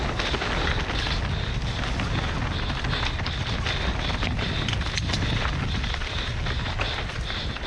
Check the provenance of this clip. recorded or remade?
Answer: recorded